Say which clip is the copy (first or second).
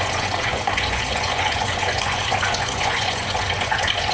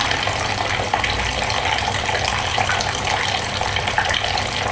first